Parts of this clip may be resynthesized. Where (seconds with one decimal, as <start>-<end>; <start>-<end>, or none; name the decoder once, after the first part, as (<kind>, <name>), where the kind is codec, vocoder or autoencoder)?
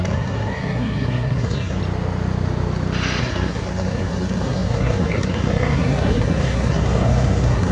0.0-1.8 (codec, SNAC); 3.2-7.7